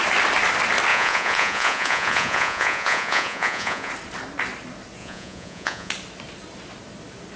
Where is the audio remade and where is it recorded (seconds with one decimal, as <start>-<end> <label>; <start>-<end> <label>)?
0.0-0.9 recorded; 0.9-3.9 remade; 3.9-5.0 recorded; 5.0-5.9 remade; 5.9-7.4 recorded